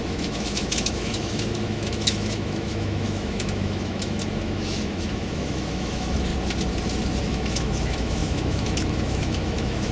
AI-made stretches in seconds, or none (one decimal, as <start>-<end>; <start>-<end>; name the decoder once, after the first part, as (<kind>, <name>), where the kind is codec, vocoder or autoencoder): 0.0-6.3 (autoencoder, DAC-VAE); 7.2-9.9